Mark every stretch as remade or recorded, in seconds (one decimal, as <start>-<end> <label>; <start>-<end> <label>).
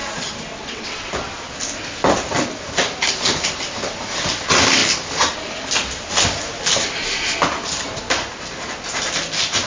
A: 0.0-0.6 recorded; 0.6-1.1 remade; 1.1-9.7 recorded